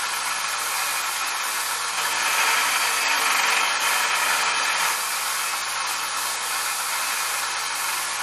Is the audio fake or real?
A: real